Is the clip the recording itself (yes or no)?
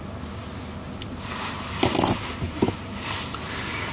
yes